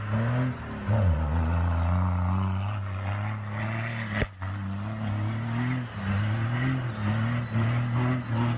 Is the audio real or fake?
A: real